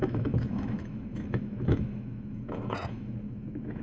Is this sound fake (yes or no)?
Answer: yes